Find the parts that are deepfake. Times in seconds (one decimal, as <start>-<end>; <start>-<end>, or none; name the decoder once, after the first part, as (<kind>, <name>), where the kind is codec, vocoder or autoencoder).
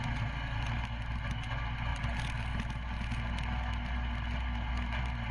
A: none